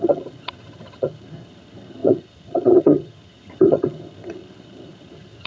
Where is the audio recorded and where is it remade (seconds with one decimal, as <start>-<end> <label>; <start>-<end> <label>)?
0.0-5.5 remade